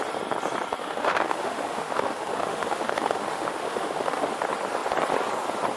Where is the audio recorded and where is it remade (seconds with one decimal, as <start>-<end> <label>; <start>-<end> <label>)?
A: 0.0-0.8 recorded; 0.8-4.3 remade; 4.3-5.8 recorded